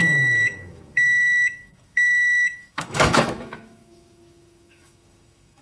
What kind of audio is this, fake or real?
fake